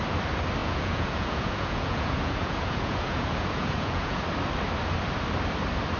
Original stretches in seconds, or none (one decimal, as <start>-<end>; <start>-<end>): 0.0-0.6; 4.2-6.0